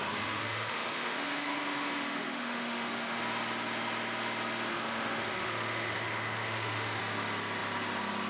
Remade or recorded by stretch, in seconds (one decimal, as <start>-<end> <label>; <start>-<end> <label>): 0.0-3.2 remade; 3.2-4.7 recorded; 4.7-7.0 remade; 7.0-8.3 recorded